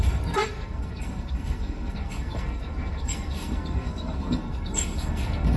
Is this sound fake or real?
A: fake